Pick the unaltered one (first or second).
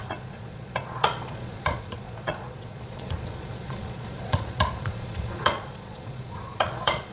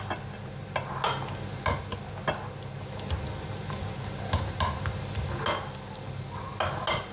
second